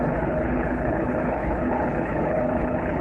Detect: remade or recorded remade